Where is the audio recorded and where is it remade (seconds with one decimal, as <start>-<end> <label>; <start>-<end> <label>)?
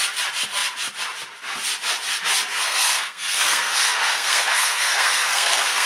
0.0-2.5 recorded; 2.5-5.9 remade